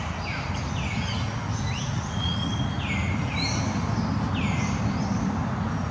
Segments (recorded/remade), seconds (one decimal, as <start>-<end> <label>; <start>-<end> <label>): 0.0-1.8 recorded; 1.8-2.5 remade; 2.5-5.9 recorded